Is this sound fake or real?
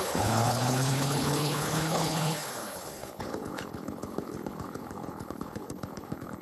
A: fake